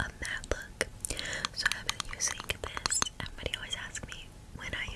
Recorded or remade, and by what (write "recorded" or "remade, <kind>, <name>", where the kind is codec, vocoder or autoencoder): recorded